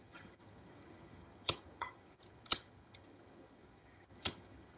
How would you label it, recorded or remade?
remade